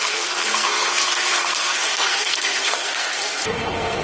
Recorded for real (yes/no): no